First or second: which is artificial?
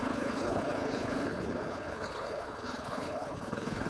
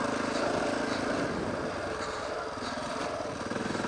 first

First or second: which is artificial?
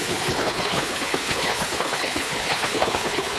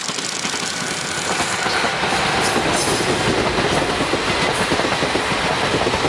first